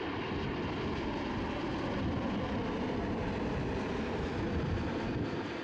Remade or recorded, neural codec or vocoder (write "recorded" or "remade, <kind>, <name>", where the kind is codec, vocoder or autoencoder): recorded